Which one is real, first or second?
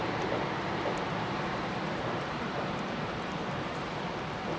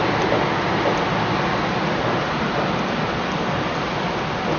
second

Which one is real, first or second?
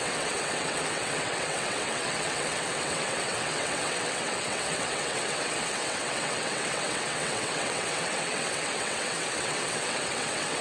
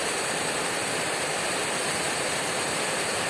second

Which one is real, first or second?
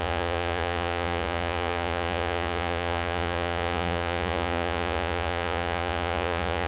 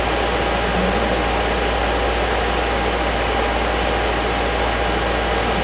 second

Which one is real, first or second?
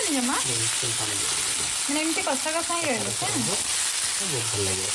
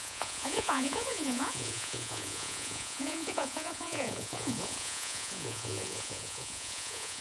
first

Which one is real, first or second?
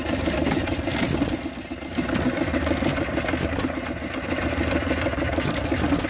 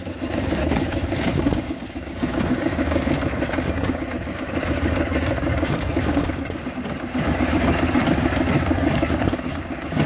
first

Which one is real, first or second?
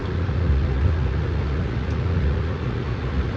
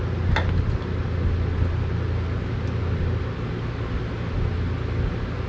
second